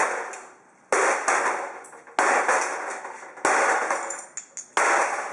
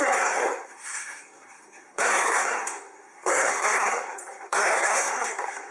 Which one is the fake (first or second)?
second